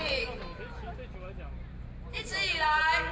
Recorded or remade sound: recorded